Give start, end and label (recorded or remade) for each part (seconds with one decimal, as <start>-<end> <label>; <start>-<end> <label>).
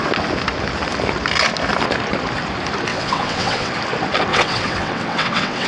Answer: 0.0-2.9 recorded; 2.9-3.7 remade; 3.7-4.3 recorded; 4.3-5.7 remade